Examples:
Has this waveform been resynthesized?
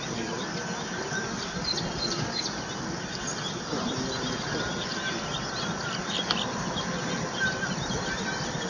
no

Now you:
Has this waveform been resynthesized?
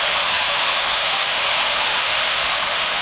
yes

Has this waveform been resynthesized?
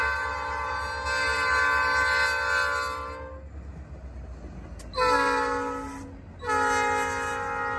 no